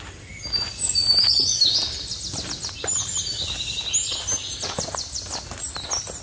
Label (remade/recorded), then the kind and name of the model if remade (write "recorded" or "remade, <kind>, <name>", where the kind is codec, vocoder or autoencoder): recorded